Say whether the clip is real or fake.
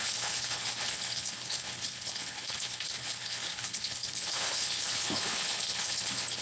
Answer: fake